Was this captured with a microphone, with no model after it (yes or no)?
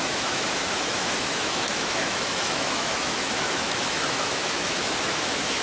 no